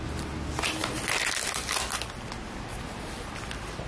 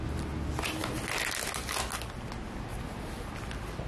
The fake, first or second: first